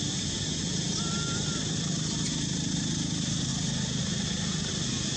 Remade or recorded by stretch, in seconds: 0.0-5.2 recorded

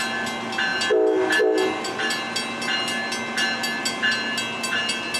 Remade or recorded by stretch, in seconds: 0.0-5.2 recorded

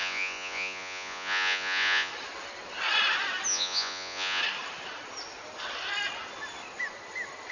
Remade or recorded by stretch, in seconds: 0.0-2.1 remade; 2.1-3.5 recorded; 3.5-4.4 remade; 4.4-7.5 recorded

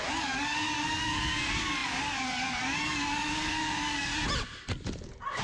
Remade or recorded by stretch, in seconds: 0.0-4.1 remade; 4.1-5.4 recorded

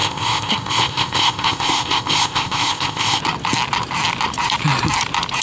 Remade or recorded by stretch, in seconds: 0.0-3.2 remade; 3.2-5.4 recorded

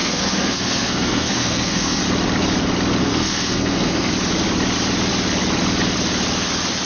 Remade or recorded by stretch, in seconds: 0.0-2.0 remade; 2.0-3.0 recorded; 3.0-4.1 remade; 4.1-6.9 recorded